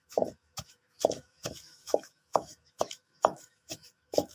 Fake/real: fake